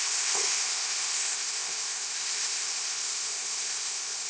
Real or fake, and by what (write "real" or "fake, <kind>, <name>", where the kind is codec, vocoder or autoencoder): fake, codec, ZipCodec